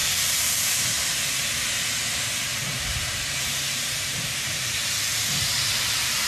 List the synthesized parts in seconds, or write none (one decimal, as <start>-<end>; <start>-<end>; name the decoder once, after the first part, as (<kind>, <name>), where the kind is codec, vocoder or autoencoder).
0.0-0.8 (vocoder, BigVGAN v2); 2.5-6.3